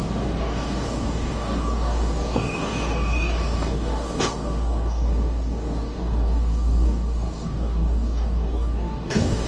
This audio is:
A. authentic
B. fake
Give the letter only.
B